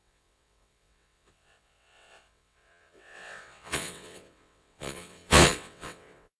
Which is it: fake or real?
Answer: fake